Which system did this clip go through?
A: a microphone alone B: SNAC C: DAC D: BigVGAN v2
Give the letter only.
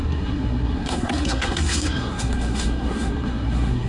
B